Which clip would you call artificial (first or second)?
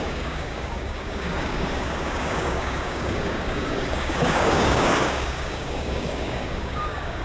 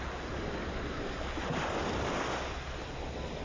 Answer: first